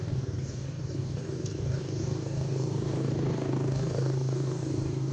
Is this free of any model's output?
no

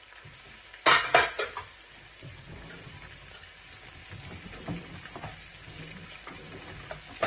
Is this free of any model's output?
yes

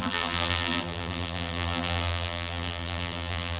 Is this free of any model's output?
no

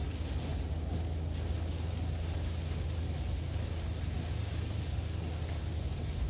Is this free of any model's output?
yes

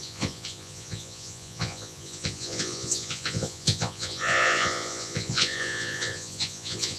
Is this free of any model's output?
no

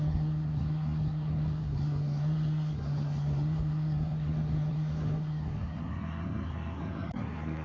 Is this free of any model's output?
no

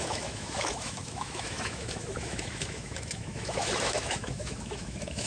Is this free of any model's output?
no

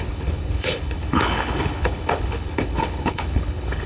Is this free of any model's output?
no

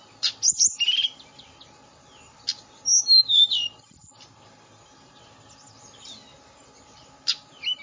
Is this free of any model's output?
yes